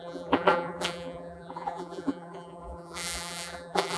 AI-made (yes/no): yes